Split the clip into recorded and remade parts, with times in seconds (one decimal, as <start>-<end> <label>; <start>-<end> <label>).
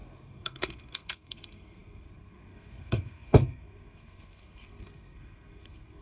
0.0-6.0 remade